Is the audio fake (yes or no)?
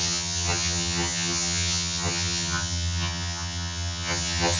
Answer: yes